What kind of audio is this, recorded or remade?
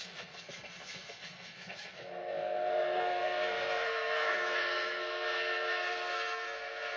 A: remade